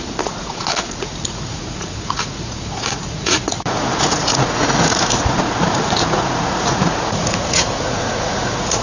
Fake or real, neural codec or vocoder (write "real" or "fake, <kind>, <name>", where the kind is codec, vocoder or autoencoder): fake, vocoder, Vocos